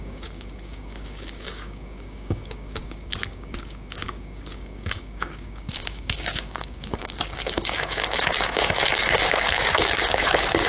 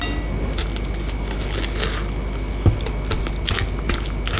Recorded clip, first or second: second